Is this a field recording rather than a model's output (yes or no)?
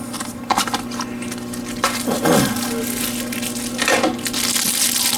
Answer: yes